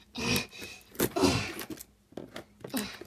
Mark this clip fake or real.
real